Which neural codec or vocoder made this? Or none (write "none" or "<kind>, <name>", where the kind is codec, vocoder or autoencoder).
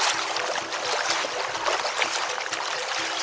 none